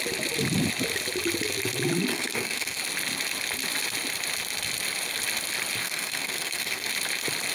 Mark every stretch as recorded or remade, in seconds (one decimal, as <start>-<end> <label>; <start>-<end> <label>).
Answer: 0.0-2.1 recorded; 2.1-2.8 remade; 2.8-5.8 recorded; 5.8-6.9 remade; 6.9-7.5 recorded

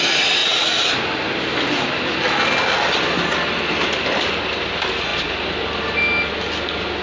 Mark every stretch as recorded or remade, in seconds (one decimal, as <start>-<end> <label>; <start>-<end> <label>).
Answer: 0.0-7.0 recorded